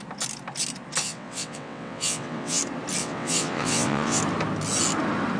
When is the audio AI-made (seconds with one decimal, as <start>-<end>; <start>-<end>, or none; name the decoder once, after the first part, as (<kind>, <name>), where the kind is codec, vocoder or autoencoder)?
1.0-2.6 (vocoder, WaveNeXt); 3.0-4.2